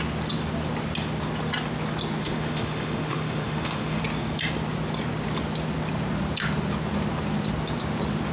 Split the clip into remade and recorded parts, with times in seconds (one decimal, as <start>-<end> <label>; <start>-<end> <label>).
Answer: 0.0-2.2 recorded; 2.2-4.0 remade; 4.0-8.3 recorded